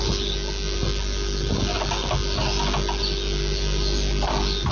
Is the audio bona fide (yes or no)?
yes